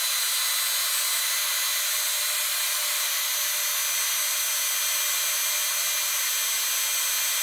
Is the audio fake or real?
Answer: real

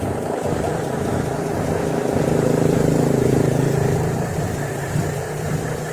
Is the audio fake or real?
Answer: fake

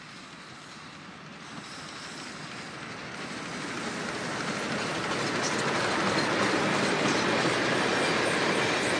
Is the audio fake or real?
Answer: real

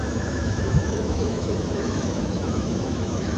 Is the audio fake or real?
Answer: fake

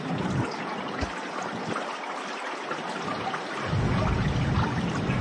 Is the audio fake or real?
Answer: real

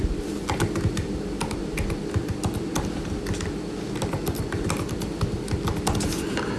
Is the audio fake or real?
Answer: real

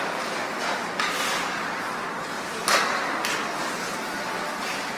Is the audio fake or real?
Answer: real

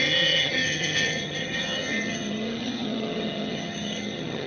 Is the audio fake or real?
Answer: fake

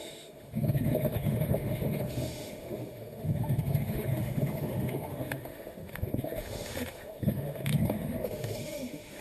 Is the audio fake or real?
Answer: fake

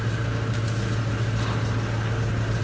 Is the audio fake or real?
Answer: real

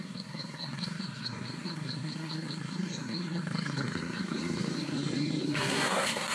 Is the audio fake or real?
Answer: fake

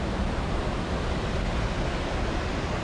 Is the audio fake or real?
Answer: real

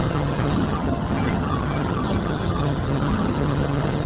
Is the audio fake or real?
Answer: fake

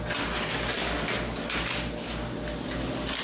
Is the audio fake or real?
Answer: real